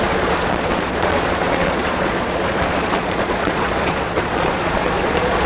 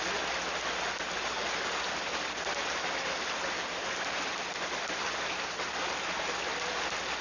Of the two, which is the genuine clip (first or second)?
second